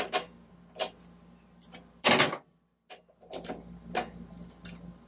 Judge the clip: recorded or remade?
recorded